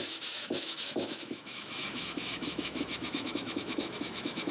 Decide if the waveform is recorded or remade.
remade